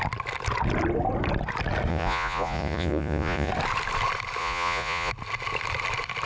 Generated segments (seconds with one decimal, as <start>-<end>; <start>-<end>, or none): 1.9-3.5; 4.4-5.1